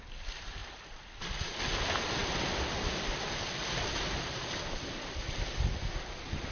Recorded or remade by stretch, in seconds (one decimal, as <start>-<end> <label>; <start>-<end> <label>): 0.0-6.5 recorded